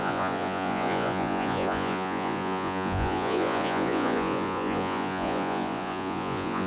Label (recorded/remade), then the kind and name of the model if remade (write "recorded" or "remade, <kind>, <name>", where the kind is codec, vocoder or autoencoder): remade, vocoder, Vocos